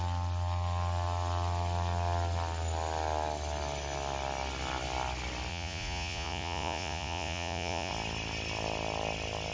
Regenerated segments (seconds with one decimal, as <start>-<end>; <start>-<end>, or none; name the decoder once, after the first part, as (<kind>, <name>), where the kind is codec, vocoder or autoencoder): 5.5-7.9 (vocoder, Vocos)